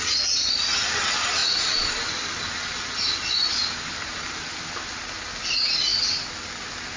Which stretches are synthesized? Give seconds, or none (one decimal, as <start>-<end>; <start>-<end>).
none